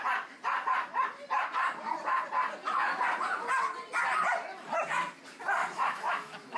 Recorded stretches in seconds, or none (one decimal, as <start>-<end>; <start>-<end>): 0.0-5.6